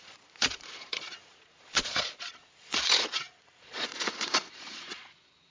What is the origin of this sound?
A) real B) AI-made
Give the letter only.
B